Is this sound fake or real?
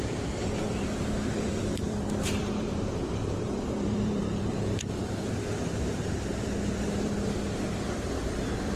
fake